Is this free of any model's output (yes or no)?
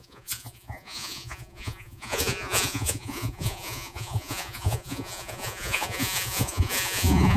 no